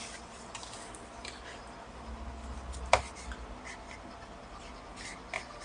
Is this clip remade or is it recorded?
recorded